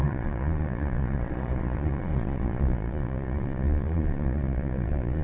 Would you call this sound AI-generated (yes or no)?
yes